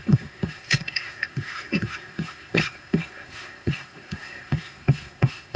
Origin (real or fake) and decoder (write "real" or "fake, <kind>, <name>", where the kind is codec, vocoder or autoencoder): fake, codec, SNAC